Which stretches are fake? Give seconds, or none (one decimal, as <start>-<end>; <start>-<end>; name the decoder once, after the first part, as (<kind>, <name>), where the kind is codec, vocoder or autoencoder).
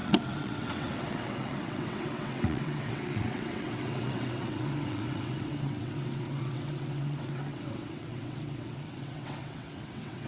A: 0.0-10.3 (vocoder, WaveNeXt)